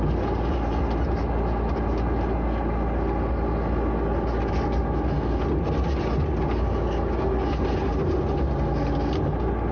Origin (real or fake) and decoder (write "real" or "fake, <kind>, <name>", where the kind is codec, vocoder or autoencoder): real